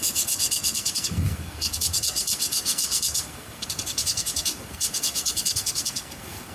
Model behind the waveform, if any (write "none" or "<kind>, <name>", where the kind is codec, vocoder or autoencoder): codec, SNAC